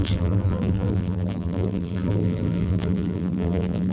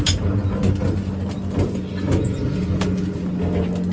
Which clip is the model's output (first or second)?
first